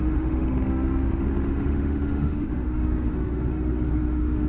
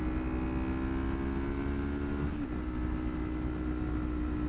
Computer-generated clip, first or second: first